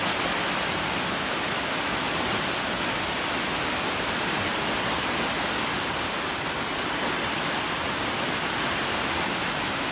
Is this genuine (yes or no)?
yes